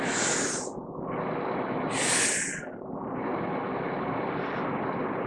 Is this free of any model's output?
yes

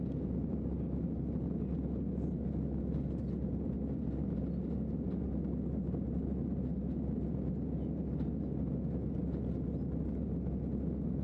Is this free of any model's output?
yes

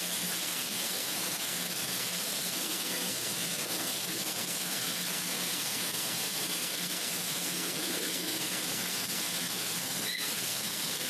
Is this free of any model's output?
no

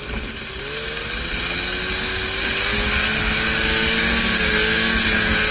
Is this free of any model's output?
yes